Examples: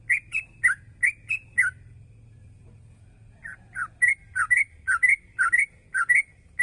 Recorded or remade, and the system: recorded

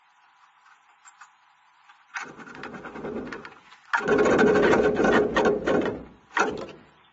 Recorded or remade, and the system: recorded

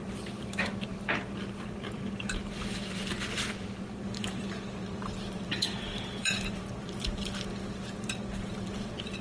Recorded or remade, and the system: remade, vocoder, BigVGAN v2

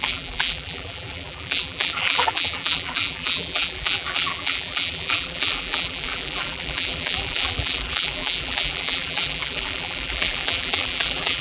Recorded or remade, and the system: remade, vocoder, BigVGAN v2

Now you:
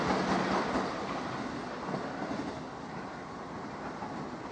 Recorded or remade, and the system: recorded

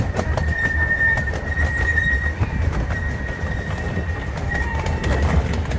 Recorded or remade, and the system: remade, vocoder, BigVGAN v2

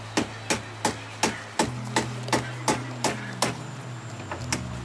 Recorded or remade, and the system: recorded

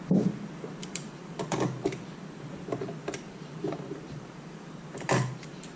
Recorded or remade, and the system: remade, vocoder, BigVGAN v2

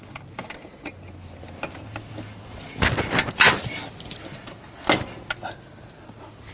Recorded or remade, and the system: recorded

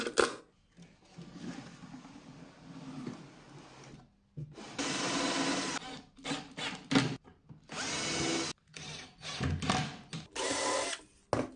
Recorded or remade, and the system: recorded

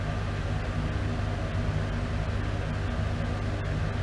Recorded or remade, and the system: recorded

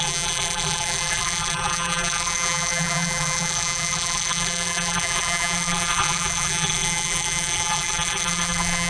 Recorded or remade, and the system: remade, vocoder, BigVGAN v2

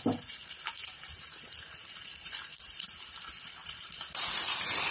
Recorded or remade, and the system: remade, vocoder, BigVGAN v2